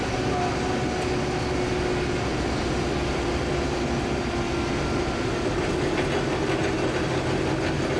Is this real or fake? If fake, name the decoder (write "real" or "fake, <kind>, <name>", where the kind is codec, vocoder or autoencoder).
real